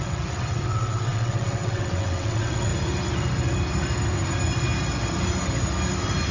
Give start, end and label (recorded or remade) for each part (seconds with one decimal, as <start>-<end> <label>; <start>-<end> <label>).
0.0-2.7 remade; 2.7-6.3 recorded